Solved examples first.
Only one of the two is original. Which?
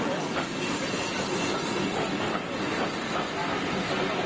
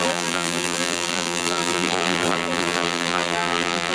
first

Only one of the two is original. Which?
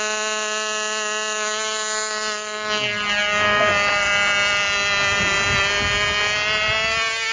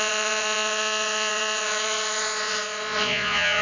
first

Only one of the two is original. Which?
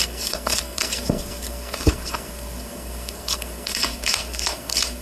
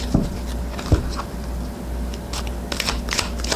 second